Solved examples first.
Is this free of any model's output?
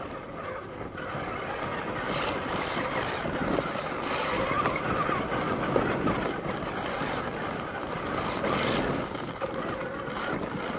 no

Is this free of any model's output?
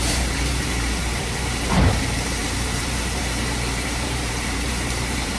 no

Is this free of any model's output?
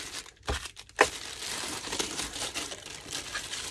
no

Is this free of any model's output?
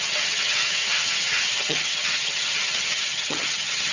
no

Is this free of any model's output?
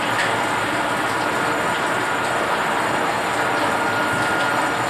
yes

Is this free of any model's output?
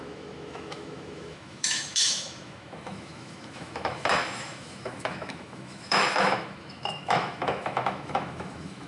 no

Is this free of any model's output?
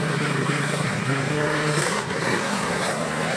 no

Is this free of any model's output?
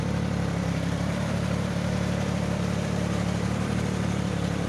no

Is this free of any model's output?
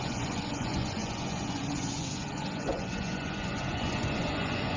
no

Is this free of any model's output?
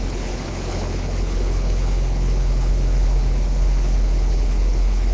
no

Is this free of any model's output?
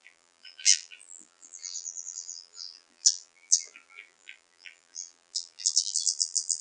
no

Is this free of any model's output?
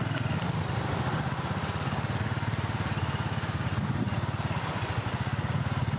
yes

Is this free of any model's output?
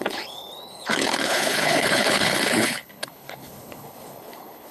no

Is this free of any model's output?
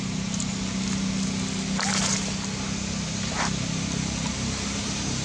yes